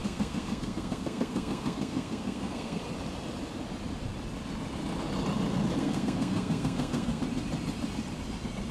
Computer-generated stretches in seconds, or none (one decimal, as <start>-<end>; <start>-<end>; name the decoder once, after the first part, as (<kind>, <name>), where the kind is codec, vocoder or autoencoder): 0.0-2.8 (codec, SNAC); 5.8-7.2